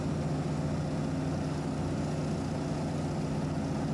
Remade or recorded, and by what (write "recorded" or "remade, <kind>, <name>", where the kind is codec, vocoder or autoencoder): recorded